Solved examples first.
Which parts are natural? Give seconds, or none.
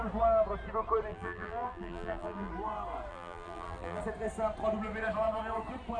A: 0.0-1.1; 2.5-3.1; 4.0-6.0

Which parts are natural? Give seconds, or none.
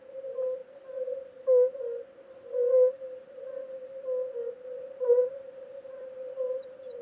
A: 0.6-4.5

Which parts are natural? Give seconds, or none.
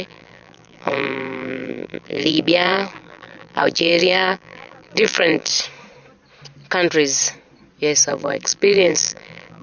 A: 5.5-8.1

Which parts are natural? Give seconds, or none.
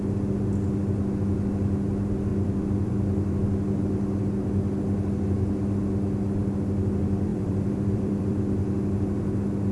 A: 0.0-2.3; 2.9-7.3; 8.4-9.7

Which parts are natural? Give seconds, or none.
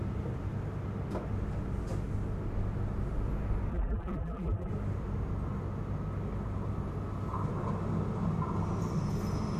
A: 0.0-3.7; 4.7-9.6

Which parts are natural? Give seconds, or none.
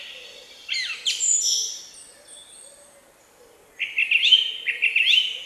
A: 0.0-0.6; 1.8-4.0; 4.8-5.5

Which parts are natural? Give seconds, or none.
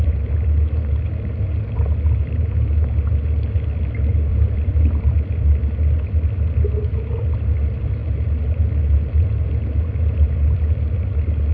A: 0.0-4.3; 5.1-11.5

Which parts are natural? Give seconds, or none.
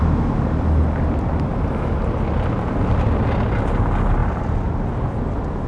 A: 0.0-5.7